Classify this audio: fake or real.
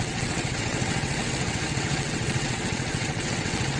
fake